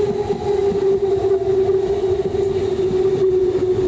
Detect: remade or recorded recorded